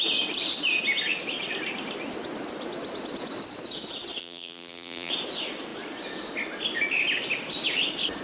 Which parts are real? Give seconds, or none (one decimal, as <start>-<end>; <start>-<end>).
0.0-4.2; 5.1-8.2